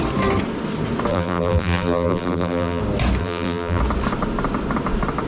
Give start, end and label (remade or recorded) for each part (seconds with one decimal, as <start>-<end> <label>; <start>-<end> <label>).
0.0-1.1 recorded; 1.1-2.8 remade; 2.8-3.2 recorded; 3.2-3.8 remade; 3.8-5.3 recorded

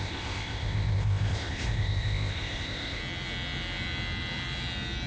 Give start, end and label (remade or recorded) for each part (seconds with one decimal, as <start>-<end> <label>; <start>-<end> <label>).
0.0-3.0 remade; 3.0-5.1 recorded

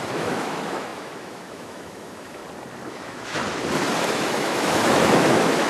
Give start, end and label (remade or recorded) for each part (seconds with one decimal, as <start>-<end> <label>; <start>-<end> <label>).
0.0-2.4 remade; 2.4-2.9 recorded; 2.9-3.4 remade; 3.4-4.1 recorded; 4.1-5.7 remade

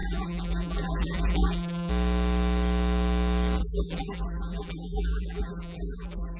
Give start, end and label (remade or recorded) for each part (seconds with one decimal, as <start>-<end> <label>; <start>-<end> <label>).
0.0-1.9 remade; 1.9-3.6 recorded; 3.6-6.4 remade

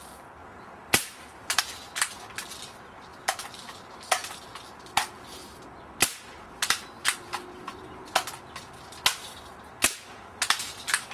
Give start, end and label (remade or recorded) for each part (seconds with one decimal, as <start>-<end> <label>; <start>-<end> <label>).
0.0-0.4 recorded; 0.4-1.6 remade; 1.6-3.1 recorded; 3.1-3.6 remade; 3.6-11.1 recorded

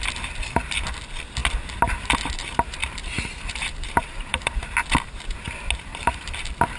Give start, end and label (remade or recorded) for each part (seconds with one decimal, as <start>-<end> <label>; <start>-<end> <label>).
0.0-2.8 recorded; 2.8-4.7 remade; 4.7-5.9 recorded; 5.9-6.8 remade

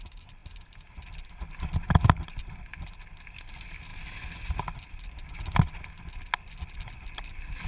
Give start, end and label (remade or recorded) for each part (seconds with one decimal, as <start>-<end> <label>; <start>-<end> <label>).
0.0-7.7 recorded

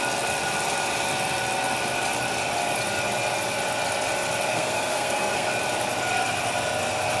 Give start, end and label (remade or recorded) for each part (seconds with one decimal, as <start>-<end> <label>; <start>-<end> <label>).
0.0-4.5 recorded; 4.5-5.5 remade; 5.5-7.2 recorded